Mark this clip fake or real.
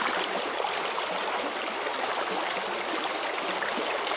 real